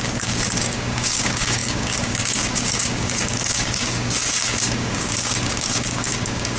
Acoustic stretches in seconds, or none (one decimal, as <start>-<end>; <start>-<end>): none